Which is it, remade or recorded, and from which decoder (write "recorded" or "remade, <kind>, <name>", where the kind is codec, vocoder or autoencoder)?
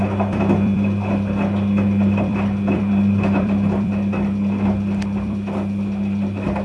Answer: remade, vocoder, BigVGAN v2